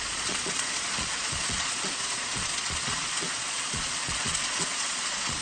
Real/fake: fake